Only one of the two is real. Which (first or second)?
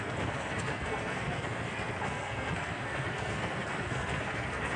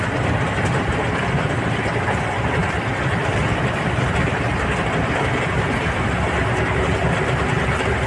second